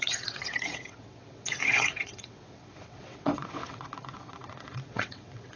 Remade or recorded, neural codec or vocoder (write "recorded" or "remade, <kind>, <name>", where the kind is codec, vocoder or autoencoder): remade, vocoder, WaveNeXt